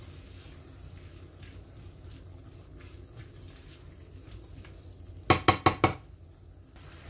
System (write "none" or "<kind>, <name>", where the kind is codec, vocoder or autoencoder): none